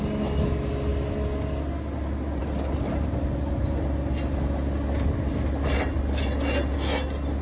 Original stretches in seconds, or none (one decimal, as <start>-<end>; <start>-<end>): 0.0-7.4